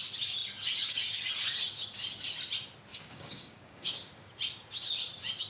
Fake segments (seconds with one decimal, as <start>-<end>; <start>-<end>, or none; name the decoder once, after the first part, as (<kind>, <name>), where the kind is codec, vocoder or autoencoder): 2.9-4.3 (codec, DAC)